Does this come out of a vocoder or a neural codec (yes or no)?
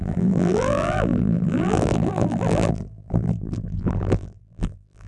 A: yes